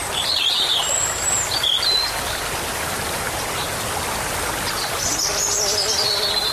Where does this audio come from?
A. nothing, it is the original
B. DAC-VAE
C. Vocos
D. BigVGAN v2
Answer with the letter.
A